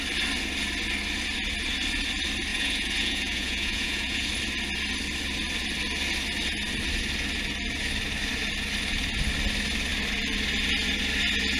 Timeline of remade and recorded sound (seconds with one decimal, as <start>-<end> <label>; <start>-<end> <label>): 0.0-2.5 recorded; 2.5-4.3 remade; 4.3-11.6 recorded